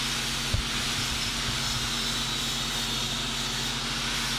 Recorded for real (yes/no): yes